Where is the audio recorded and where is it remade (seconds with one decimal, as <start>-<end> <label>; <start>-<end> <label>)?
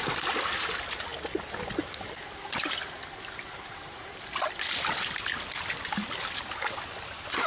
0.0-7.5 recorded